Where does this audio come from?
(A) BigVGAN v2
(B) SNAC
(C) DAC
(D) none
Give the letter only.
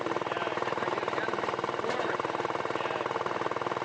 A